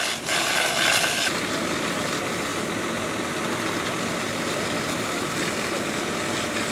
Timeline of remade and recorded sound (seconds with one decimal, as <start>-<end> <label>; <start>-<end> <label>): 0.0-6.7 recorded